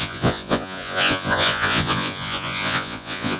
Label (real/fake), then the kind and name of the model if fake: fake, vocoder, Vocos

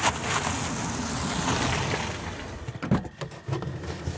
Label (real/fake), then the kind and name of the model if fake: real